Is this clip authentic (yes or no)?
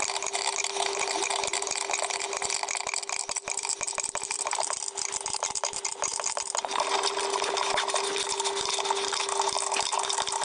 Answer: yes